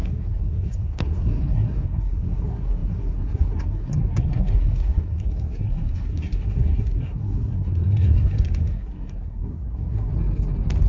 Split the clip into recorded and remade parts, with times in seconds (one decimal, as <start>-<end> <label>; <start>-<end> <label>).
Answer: 0.0-10.1 remade; 10.1-10.9 recorded